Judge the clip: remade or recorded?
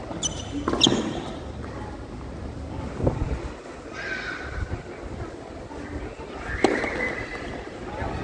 recorded